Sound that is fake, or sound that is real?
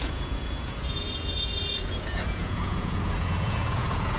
fake